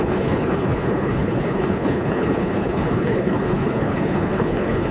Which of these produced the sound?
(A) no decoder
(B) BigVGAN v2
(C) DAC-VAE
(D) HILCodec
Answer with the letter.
D